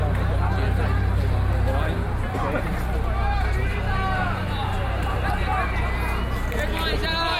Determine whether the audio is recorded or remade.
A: recorded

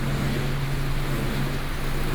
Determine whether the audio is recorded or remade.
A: recorded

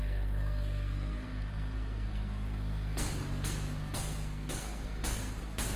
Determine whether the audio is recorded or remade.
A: remade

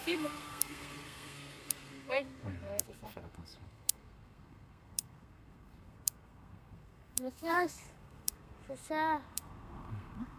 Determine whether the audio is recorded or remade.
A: remade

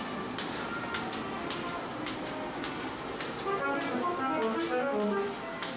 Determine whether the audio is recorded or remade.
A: recorded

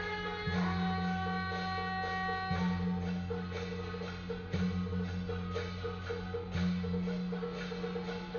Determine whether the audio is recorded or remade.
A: recorded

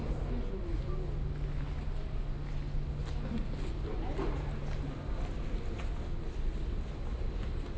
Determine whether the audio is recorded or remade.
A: recorded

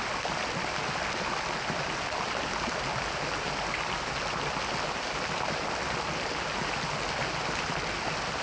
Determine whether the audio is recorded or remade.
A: recorded